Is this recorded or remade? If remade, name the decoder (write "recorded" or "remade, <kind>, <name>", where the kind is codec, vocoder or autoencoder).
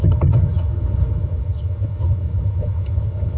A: remade, vocoder, HiFi-GAN